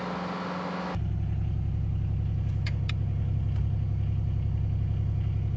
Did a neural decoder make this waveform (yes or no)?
no